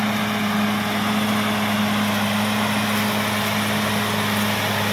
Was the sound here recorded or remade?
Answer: recorded